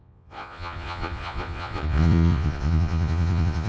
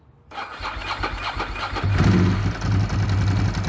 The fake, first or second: first